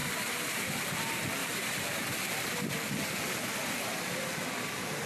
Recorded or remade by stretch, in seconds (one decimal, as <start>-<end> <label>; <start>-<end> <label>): 0.0-0.6 remade; 0.6-1.4 recorded; 1.4-2.0 remade; 2.0-5.1 recorded

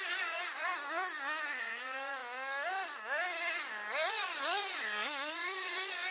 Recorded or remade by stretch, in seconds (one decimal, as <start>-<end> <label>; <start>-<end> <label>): 0.0-0.7 remade; 0.7-1.6 recorded; 1.6-2.2 remade; 2.2-4.1 recorded; 4.1-6.1 remade

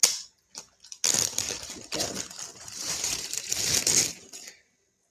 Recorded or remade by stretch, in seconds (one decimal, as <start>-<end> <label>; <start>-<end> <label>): 0.0-2.5 recorded; 2.5-3.5 remade; 3.5-5.1 recorded

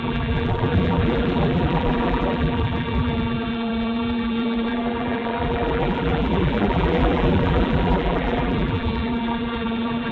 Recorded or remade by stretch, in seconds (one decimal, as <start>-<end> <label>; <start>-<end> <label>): 0.0-10.1 remade

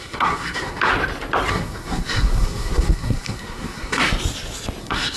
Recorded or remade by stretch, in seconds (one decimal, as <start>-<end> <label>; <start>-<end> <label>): 0.0-0.9 remade; 0.9-1.5 recorded; 1.5-4.0 remade; 4.0-4.8 recorded; 4.8-5.2 remade